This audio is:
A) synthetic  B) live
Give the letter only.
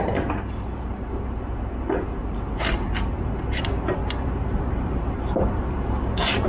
A